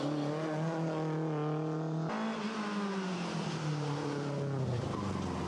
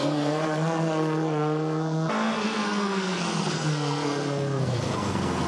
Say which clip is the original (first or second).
first